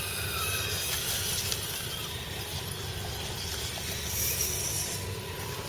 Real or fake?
real